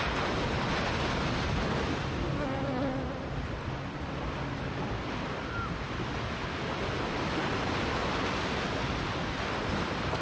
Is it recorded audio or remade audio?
recorded